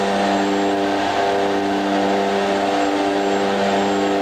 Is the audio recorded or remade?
recorded